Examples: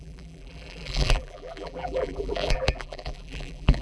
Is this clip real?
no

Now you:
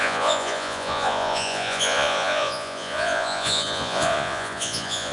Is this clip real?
no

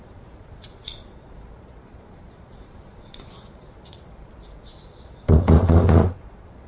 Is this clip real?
no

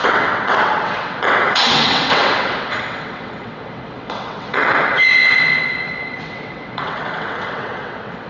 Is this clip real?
no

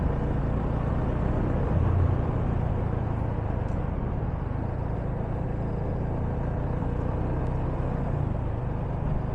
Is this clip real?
yes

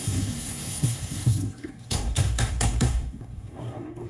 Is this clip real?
no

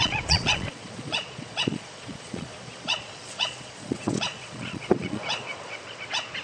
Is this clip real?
no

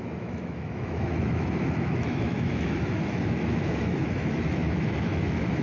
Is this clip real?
no